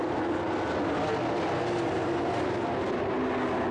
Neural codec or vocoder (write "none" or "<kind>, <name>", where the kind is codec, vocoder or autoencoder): none